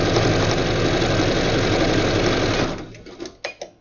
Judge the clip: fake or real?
real